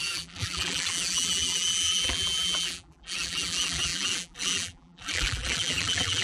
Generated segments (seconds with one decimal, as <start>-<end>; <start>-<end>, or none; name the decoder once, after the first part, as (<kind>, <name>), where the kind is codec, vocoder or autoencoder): 0.0-6.2 (vocoder, BigVGAN v2)